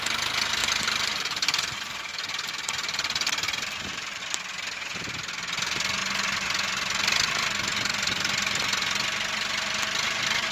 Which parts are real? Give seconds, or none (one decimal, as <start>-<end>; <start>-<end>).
0.0-0.6; 4.2-10.5